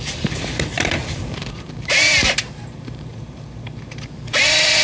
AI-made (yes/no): yes